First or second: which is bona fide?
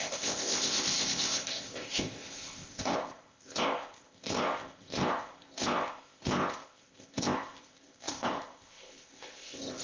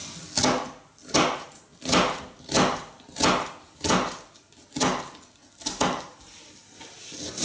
second